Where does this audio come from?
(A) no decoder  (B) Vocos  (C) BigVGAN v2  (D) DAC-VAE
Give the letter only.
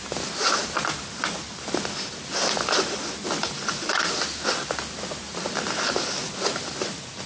A